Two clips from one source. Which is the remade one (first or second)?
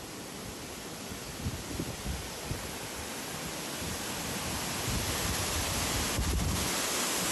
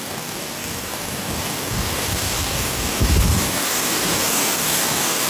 second